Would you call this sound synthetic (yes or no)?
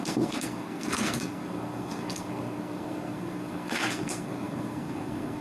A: yes